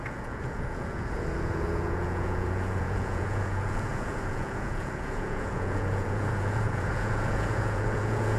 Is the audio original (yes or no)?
no